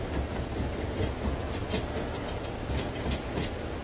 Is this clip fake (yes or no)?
no